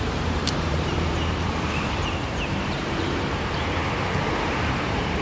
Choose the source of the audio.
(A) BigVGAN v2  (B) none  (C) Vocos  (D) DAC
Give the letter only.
A